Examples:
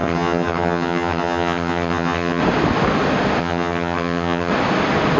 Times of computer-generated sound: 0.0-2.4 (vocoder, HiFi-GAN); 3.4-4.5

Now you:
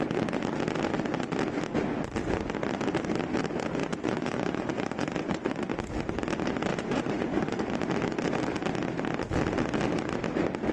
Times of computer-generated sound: 3.8-5.7 (vocoder, Vocos); 6.7-7.7

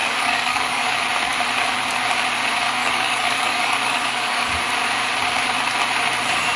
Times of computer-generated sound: 0.0-1.0 (codec, DAC); 2.8-4.5

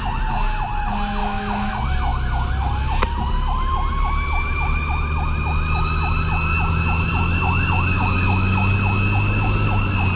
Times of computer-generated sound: 1.2-1.7 (autoencoder, DAC-VAE)